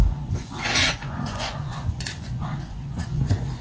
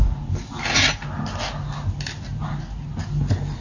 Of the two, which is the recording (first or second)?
second